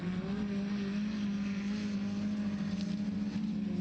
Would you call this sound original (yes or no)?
yes